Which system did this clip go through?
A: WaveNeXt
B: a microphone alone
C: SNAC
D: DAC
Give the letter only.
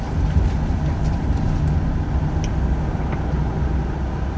B